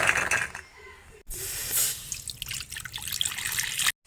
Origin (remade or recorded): recorded